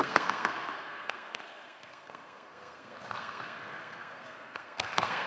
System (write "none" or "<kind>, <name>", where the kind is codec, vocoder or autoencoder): codec, SNAC